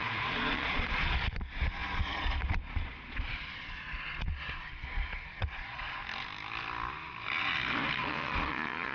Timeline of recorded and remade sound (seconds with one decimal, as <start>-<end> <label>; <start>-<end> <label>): 0.0-6.0 remade; 6.0-8.0 recorded; 8.0-8.9 remade